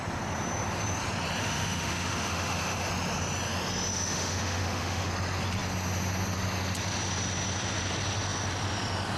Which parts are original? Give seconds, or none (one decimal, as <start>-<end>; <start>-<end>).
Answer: 0.0-1.4; 2.9-3.9; 5.1-9.2